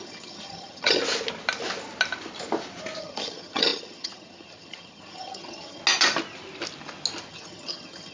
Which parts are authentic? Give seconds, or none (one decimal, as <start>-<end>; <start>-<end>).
1.0-3.0; 5.8-7.3